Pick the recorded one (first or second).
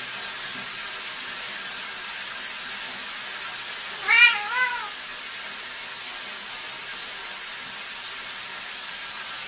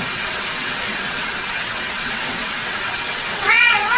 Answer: first